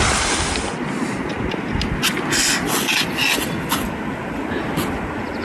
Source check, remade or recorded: recorded